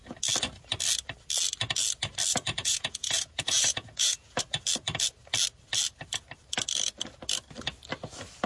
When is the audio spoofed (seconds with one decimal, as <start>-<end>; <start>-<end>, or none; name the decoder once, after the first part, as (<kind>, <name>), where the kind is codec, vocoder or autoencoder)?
2.3-4.4 (vocoder, Vocos)